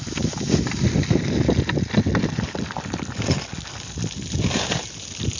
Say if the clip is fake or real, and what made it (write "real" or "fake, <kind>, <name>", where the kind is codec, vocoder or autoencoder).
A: real